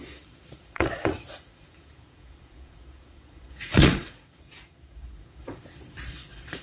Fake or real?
fake